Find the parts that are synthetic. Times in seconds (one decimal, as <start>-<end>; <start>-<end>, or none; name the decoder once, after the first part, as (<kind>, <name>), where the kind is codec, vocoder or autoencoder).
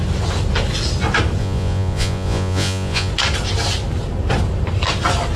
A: 1.4-3.1 (vocoder, Vocos)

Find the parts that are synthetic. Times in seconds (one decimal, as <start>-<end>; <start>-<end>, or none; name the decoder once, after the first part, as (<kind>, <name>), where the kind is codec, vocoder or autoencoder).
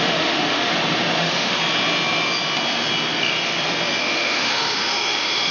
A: 0.0-0.7 (autoencoder, DAC-VAE); 1.2-1.6; 4.0-5.5